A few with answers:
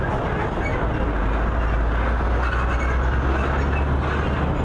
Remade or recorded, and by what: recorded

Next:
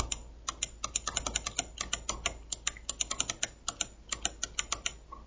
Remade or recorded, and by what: recorded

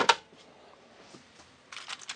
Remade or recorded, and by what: recorded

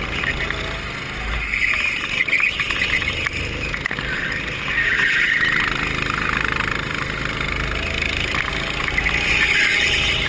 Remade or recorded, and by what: recorded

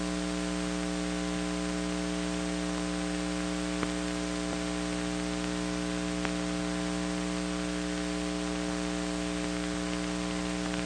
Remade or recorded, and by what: recorded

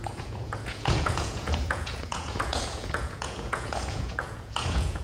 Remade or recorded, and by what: remade, vocoder, Vocos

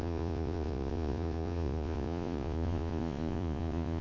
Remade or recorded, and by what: remade, vocoder, Vocos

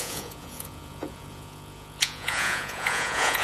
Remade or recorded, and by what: remade, vocoder, Vocos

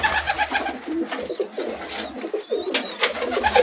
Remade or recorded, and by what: recorded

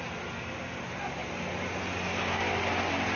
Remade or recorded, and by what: recorded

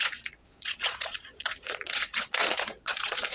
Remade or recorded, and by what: remade, vocoder, Vocos